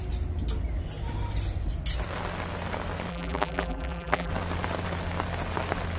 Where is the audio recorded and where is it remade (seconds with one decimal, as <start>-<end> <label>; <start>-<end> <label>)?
0.0-3.1 recorded; 3.1-4.3 remade; 4.3-6.0 recorded